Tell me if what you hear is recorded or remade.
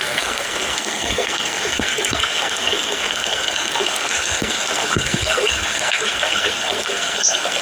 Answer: remade